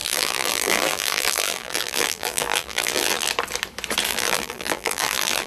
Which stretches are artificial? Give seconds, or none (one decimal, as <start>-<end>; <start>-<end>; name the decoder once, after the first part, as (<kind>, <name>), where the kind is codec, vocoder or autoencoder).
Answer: 0.0-3.3 (vocoder, BigVGAN v2); 4.1-5.5